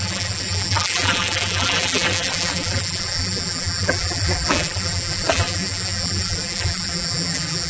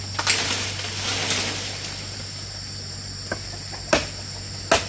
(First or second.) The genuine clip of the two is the second